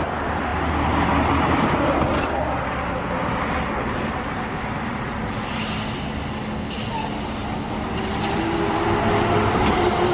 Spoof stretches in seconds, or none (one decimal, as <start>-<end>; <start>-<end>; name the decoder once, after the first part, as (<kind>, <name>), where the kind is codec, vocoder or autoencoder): none